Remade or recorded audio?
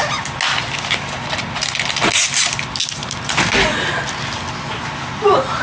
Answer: recorded